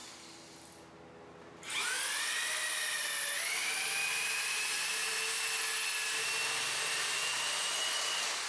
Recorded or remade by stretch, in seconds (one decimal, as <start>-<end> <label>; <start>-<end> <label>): 0.0-8.5 recorded